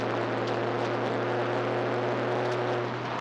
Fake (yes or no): no